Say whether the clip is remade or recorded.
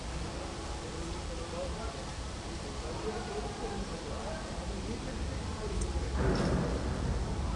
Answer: remade